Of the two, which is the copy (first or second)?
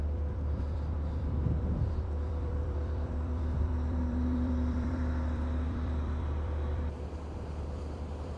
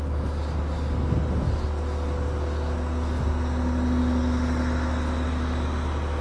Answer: first